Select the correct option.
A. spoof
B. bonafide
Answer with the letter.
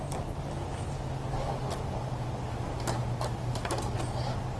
B